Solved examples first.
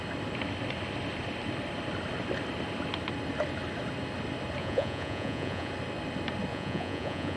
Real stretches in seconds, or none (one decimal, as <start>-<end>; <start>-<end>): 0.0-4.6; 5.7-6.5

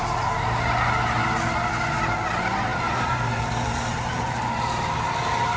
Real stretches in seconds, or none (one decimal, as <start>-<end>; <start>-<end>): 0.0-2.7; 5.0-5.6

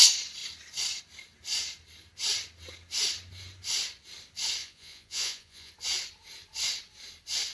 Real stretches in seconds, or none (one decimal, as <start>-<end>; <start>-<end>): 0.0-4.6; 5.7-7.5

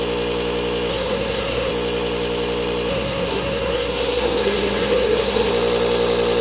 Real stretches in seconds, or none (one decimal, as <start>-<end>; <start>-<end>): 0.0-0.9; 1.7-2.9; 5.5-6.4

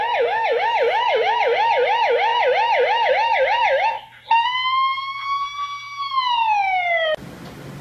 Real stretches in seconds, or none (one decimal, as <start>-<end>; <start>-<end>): 0.0-7.8

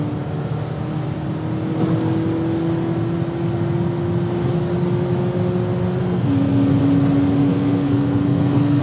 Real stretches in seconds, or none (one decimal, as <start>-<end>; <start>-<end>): 0.0-6.0; 6.8-7.5